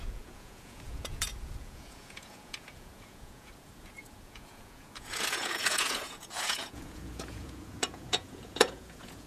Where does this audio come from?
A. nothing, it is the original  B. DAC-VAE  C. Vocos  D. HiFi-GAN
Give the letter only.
C